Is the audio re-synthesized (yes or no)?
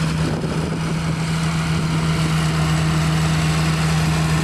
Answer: no